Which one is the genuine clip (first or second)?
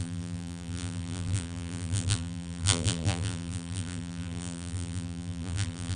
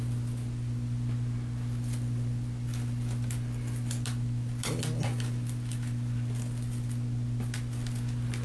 second